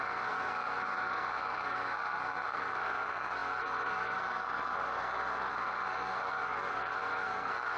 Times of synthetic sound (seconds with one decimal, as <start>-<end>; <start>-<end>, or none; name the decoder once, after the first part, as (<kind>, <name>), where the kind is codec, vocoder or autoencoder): 0.0-7.8 (codec, SNAC)